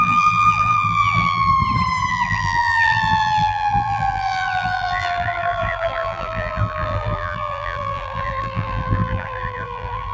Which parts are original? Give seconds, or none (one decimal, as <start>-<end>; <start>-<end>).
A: 1.5-2.1